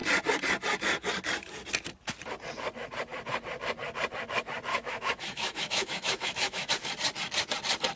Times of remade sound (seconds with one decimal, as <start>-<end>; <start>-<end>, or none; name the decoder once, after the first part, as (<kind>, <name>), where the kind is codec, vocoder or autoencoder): 4.7-6.7 (autoencoder, DAC-VAE)